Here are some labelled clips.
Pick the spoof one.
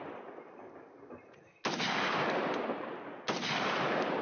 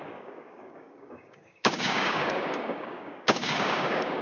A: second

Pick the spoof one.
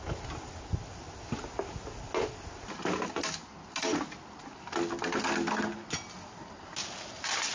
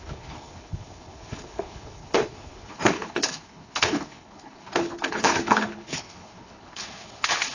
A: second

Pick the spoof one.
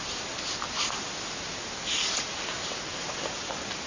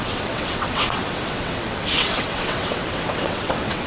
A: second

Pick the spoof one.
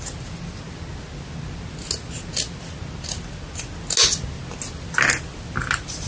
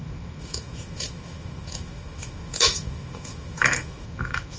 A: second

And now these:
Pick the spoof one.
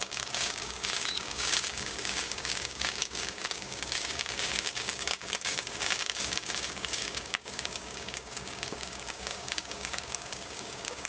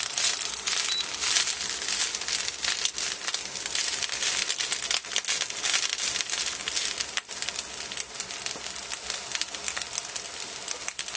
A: first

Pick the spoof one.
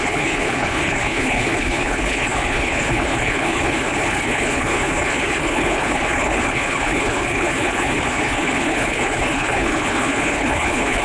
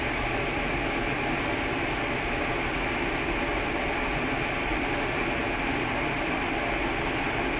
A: first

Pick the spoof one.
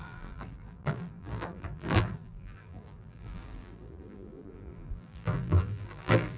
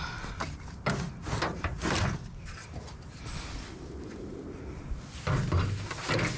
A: first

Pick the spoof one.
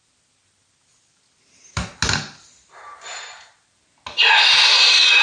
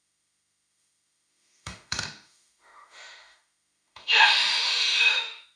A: second